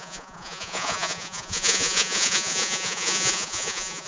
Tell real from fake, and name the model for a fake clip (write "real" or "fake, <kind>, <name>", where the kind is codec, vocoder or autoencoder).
fake, vocoder, Vocos